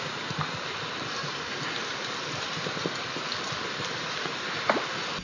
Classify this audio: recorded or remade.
recorded